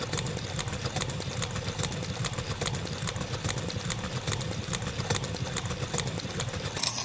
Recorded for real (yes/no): yes